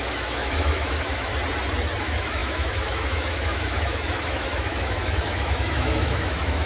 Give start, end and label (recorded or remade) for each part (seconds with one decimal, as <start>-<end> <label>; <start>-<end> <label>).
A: 0.0-1.3 remade; 1.3-2.0 recorded; 2.0-6.7 remade